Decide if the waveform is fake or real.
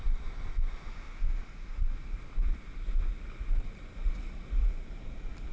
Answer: real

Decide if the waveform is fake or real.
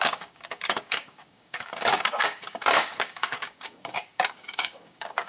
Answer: fake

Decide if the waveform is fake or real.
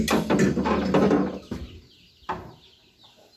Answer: real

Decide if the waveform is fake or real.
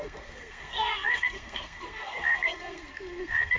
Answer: fake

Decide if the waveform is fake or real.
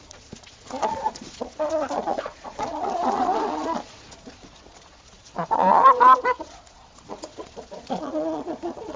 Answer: fake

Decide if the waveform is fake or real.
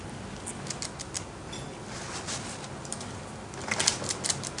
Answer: real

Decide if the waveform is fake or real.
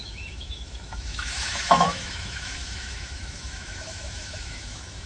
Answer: fake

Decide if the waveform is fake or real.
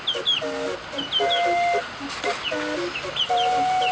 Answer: real